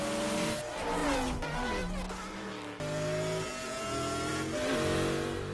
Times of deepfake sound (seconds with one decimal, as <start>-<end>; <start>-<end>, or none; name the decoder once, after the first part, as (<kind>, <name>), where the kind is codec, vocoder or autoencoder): none